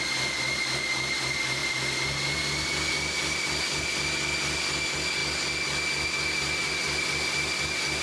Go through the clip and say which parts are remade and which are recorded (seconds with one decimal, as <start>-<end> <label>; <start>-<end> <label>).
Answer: 0.0-8.0 recorded